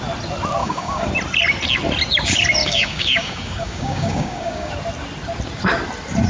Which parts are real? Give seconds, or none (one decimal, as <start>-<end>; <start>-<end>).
0.0-0.6; 1.1-2.6; 4.7-6.3